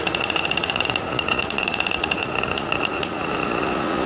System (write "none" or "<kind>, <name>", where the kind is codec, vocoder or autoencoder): vocoder, Vocos